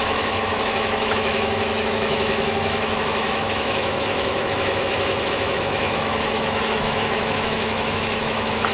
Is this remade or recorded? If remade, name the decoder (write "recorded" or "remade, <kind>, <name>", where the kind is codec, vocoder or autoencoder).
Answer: remade, autoencoder, DAC-VAE